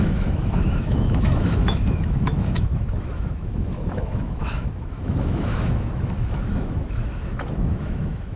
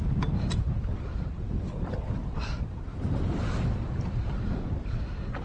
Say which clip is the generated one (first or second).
first